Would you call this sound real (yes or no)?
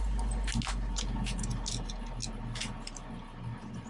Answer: yes